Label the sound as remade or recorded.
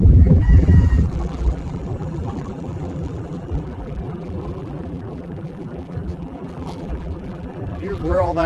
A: remade